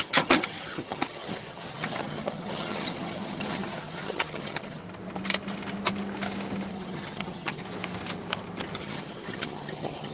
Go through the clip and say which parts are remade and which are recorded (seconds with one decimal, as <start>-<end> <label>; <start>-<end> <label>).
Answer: 0.0-4.8 remade; 4.8-6.7 recorded; 6.7-7.6 remade; 7.6-8.8 recorded; 8.8-10.1 remade